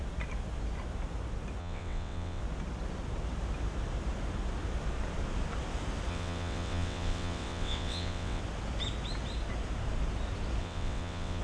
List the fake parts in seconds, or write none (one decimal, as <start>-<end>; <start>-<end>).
1.6-2.4; 6.1-8.4; 10.6-11.4